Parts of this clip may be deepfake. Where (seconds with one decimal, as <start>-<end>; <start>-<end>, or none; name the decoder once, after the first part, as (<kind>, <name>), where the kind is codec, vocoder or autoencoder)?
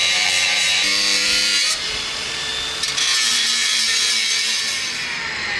0.0-2.5 (vocoder, BigVGAN v2); 3.3-5.6